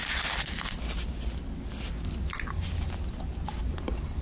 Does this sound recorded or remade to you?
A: recorded